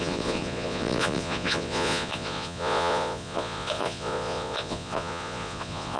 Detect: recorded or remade remade